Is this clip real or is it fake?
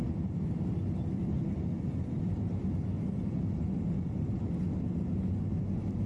fake